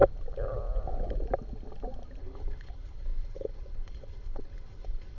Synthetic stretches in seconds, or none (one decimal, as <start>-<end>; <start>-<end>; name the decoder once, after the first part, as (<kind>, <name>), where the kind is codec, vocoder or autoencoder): 2.2-5.2 (codec, HILCodec)